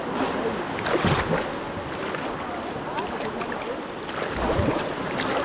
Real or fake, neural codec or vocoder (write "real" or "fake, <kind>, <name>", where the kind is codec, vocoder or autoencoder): real